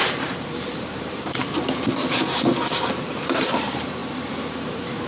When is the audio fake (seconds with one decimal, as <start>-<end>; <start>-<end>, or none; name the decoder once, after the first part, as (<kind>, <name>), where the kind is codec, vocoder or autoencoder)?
0.0-1.4 (vocoder, BigVGAN v2); 3.1-4.0; 4.5-5.1